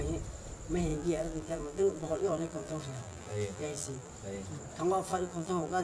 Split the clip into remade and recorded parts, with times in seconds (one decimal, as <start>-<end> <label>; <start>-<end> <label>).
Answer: 0.0-0.9 recorded; 0.9-4.1 remade; 4.1-5.1 recorded; 5.1-5.8 remade